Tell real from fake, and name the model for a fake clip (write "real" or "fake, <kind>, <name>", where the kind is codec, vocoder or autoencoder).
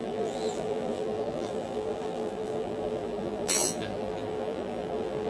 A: fake, vocoder, BigVGAN v2